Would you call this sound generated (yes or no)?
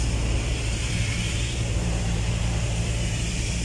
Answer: yes